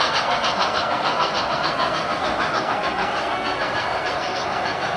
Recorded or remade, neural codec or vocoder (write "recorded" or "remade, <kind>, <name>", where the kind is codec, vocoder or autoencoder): remade, codec, SNAC